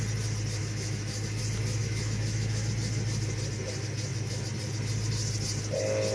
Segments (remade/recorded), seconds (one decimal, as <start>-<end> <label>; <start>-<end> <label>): 0.0-0.6 recorded; 0.6-1.4 remade; 1.4-1.8 recorded; 1.8-2.7 remade; 2.7-6.1 recorded